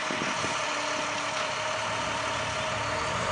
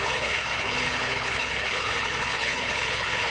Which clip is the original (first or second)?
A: first